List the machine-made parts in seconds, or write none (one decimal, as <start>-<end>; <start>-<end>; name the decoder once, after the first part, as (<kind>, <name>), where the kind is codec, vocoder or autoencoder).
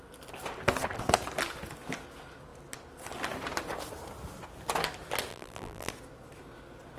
5.3-5.9 (vocoder, BigVGAN v2)